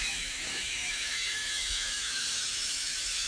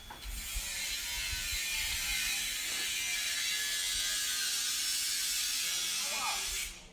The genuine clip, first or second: second